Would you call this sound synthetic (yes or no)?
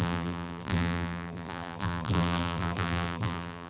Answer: yes